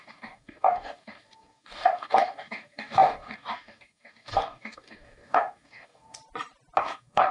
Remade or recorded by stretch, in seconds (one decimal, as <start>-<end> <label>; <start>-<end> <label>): 0.0-6.2 remade; 6.2-6.8 recorded; 6.8-7.3 remade